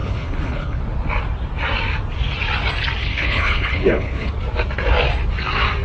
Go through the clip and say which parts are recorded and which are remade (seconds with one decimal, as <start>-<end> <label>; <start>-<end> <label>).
0.0-0.8 remade; 0.8-3.0 recorded; 3.0-4.3 remade; 4.3-5.8 recorded